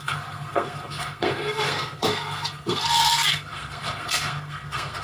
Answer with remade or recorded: remade